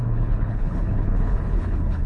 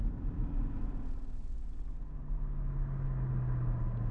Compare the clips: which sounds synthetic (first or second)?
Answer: first